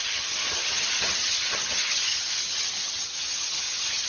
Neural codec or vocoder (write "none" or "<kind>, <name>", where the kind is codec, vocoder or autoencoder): vocoder, HiFi-GAN